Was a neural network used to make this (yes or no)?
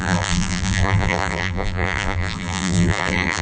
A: yes